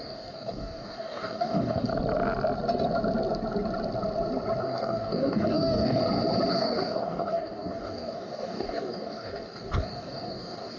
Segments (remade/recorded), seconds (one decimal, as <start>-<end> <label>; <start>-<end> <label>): 0.0-1.9 remade; 1.9-4.6 recorded; 4.6-6.0 remade; 6.0-6.5 recorded; 6.5-10.8 remade